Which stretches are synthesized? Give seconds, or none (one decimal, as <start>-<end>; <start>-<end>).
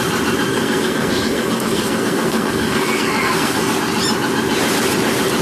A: 0.5-3.7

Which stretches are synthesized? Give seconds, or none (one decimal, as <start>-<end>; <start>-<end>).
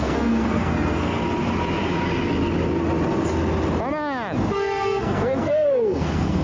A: 0.0-1.2; 4.5-6.4